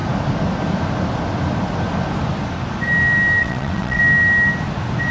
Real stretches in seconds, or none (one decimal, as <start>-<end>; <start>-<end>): 0.0-3.4; 4.0-5.1